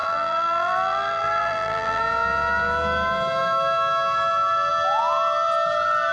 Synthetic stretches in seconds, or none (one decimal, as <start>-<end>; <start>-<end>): 0.0-2.0